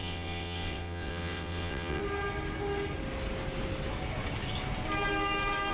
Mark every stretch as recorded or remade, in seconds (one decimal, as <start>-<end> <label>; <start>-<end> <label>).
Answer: 0.0-2.0 remade; 2.0-5.7 recorded